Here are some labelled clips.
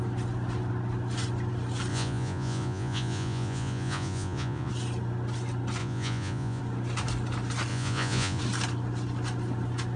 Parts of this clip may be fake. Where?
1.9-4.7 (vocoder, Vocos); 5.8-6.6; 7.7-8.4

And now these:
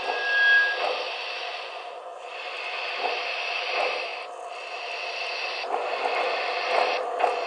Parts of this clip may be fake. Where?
1.5-2.3 (vocoder, Vocos)

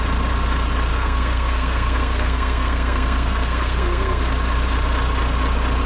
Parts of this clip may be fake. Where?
0.9-4.2 (codec, SNAC)

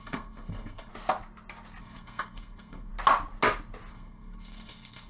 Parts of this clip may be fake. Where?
0.0-0.9 (codec, SNAC); 1.8-2.9; 3.9-5.1

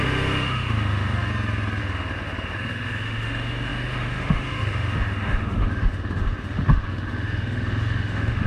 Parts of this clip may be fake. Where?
0.0-1.3 (autoencoder, DAC-VAE); 1.8-8.5

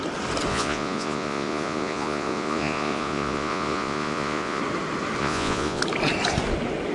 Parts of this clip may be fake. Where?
0.5-4.6 (vocoder, Vocos); 5.2-5.8